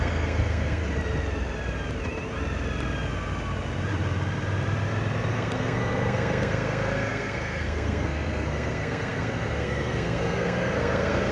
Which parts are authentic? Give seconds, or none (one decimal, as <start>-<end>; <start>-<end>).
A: 0.8-5.3